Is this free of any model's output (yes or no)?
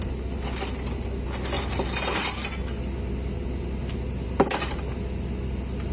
yes